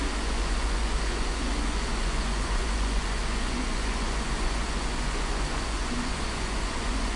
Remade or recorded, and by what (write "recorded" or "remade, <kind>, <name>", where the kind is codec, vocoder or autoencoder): remade, vocoder, Vocos